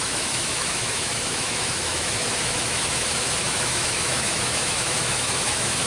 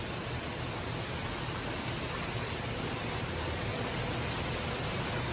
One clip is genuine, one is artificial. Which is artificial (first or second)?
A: first